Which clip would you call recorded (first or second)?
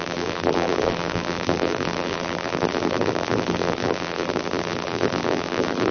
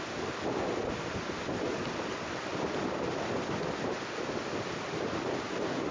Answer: second